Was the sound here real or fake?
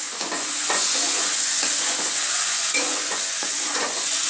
fake